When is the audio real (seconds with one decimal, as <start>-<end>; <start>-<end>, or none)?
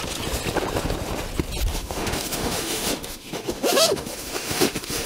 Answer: 0.0-1.7